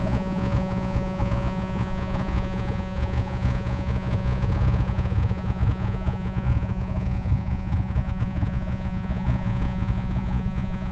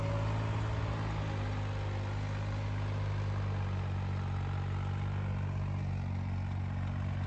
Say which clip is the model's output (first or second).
first